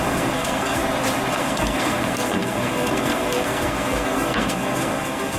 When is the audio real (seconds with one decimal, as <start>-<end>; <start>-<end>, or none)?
0.8-1.3